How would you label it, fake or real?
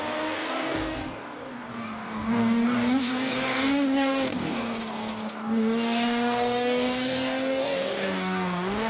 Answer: fake